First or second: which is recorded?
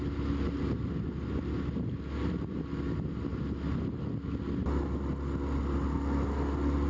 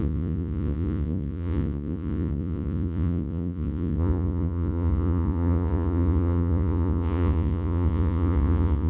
first